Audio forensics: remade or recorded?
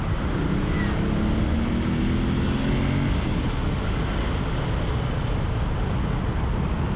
recorded